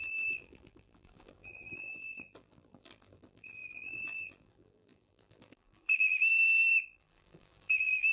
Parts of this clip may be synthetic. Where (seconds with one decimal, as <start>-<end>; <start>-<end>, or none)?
0.0-8.1